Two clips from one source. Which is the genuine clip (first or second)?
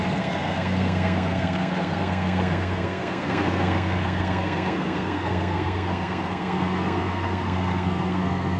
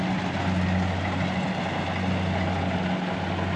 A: second